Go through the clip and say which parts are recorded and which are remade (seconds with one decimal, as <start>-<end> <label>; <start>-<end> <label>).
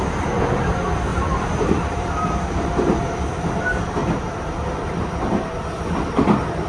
0.0-1.1 recorded; 1.1-3.6 remade; 3.6-4.0 recorded; 4.0-5.6 remade; 5.6-6.7 recorded